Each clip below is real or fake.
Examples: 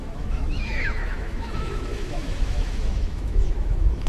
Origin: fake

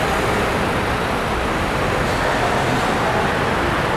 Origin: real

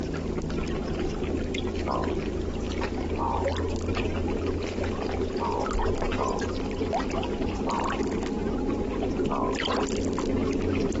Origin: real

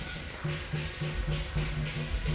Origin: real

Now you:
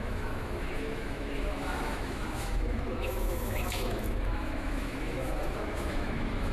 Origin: fake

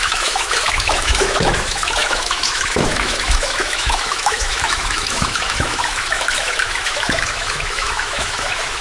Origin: fake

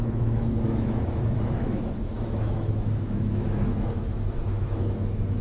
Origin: fake